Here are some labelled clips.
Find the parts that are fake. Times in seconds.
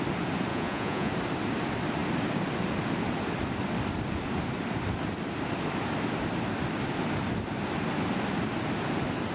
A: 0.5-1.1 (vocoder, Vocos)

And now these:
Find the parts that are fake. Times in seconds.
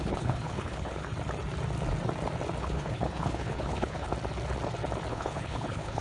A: 0.0-1.1 (codec, HILCodec); 2.6-4.1; 5.1-6.0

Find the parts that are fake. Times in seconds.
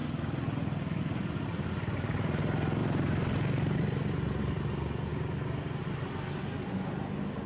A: 2.8-3.4 (vocoder, BigVGAN v2)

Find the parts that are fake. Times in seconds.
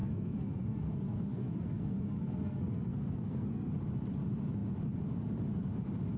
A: 0.0-3.7 (codec, SNAC)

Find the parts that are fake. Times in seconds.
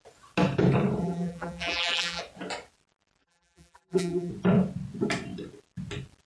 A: 1.0-2.2 (vocoder, BigVGAN v2); 3.2-4.3